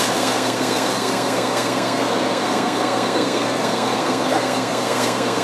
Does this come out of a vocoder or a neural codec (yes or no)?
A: yes